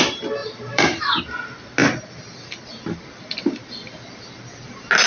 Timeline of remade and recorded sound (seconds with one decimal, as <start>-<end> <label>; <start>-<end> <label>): 0.0-0.4 recorded; 0.4-1.2 remade; 1.2-5.1 recorded